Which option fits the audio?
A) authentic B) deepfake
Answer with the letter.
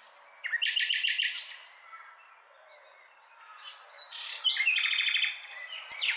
A